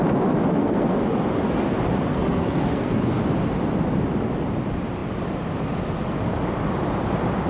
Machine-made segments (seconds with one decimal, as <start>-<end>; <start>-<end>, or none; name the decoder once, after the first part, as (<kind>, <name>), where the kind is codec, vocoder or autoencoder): 0.6-1.2 (codec, SNAC); 2.1-3.2